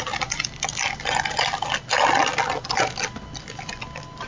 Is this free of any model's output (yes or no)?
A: yes